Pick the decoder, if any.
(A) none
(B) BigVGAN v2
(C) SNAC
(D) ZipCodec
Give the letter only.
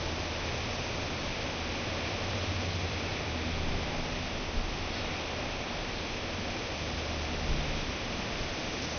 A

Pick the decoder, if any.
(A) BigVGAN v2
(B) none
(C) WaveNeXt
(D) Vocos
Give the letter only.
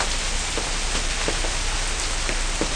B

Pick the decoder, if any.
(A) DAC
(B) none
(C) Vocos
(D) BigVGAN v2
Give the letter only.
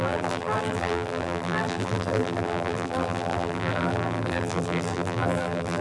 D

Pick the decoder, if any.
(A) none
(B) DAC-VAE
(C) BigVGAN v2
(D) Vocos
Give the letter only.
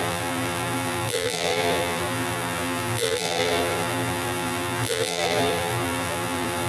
C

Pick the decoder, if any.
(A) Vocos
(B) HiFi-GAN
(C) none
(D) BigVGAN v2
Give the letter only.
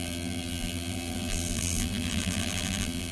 D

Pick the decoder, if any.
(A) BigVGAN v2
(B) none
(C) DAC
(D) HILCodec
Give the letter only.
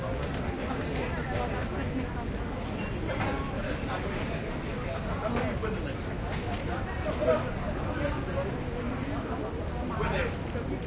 B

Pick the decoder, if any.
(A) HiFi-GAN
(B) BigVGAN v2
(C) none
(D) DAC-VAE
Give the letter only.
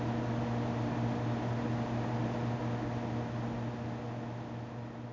C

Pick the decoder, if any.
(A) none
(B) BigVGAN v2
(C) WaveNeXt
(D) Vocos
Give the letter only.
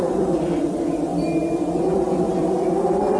B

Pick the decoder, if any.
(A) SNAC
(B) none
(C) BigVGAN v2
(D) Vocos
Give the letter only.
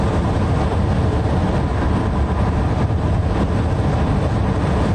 B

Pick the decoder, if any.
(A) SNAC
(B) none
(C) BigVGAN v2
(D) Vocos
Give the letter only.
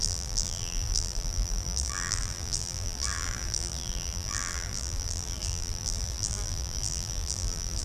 C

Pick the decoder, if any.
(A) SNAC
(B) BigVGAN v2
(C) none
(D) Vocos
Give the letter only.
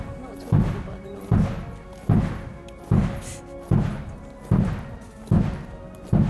C